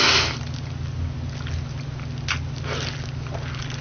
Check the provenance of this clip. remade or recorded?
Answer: recorded